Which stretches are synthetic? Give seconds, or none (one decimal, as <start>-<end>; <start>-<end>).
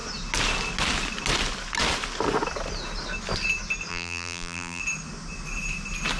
3.9-4.8